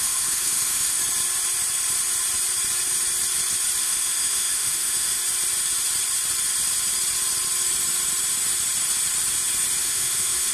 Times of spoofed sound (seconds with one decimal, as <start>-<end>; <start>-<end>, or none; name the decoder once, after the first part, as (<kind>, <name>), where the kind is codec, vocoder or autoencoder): 0.0-1.0 (autoencoder, DAC-VAE); 3.8-5.2; 9.8-10.5